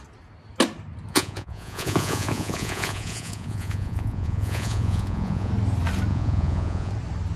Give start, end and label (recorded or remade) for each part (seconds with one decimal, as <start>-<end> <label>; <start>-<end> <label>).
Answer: 0.0-1.1 recorded; 1.1-5.5 remade; 5.5-6.1 recorded; 6.1-6.9 remade; 6.9-7.4 recorded